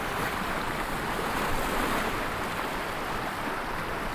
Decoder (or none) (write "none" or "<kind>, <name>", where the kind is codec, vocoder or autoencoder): none